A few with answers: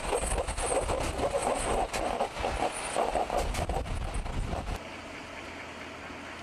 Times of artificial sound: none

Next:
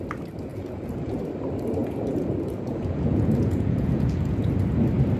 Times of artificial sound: 0.5-1.2; 1.8-4.5

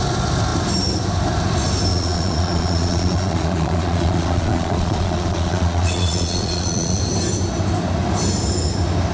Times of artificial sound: 1.9-7.0

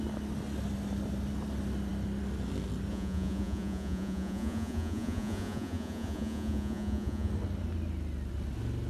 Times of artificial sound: 2.9-7.3